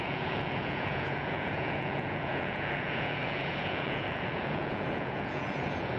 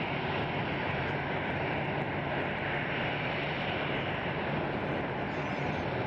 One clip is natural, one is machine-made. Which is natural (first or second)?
second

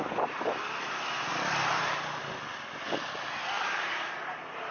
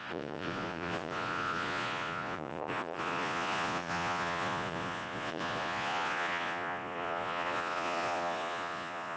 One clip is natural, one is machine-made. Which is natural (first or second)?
first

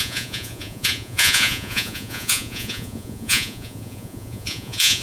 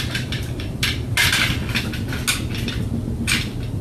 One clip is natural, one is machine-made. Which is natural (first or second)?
second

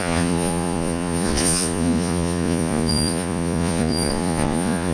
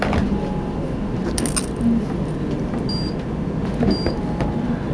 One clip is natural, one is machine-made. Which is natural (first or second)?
second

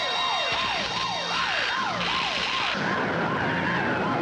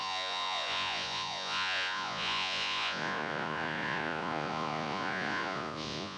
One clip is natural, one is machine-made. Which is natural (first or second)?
first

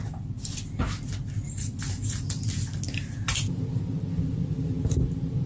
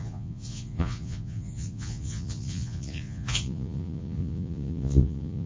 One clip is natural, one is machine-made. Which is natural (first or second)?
first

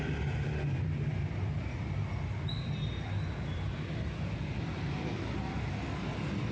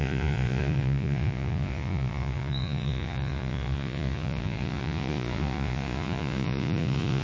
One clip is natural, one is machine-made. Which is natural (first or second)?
first